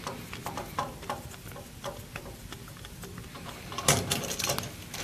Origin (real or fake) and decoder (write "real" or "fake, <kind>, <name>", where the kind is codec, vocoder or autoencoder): real